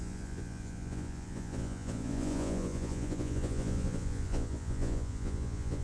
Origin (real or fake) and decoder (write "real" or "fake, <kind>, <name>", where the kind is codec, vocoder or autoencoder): fake, vocoder, Vocos